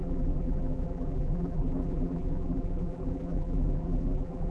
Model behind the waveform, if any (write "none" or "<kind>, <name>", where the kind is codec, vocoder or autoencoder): vocoder, BigVGAN v2